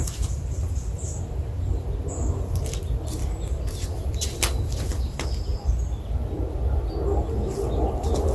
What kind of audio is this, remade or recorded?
recorded